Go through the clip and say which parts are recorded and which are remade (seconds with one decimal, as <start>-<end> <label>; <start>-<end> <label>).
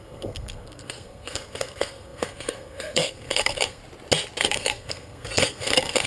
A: 0.0-3.8 remade; 3.8-4.4 recorded; 4.4-6.1 remade